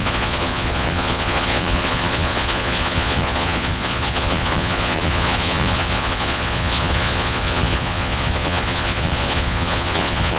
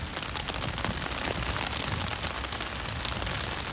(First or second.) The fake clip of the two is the first